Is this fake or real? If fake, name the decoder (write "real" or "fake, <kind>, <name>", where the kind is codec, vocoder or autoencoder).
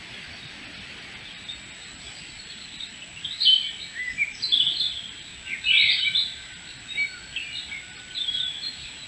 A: real